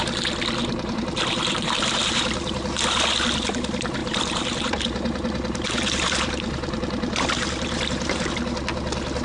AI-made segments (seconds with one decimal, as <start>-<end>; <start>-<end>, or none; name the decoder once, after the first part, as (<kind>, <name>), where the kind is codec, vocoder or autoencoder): 0.6-2.6 (vocoder, BigVGAN v2); 4.0-8.3